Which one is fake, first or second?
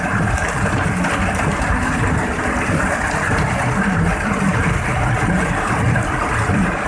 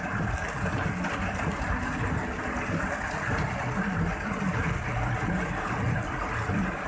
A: first